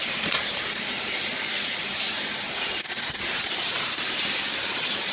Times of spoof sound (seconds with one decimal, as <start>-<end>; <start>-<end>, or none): 0.0-0.7; 1.3-4.3